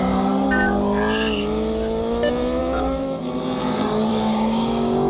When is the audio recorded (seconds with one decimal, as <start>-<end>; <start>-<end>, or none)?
0.0-2.6; 3.2-4.1